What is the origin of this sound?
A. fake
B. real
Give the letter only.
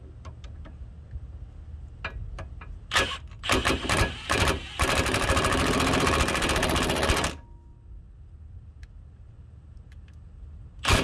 B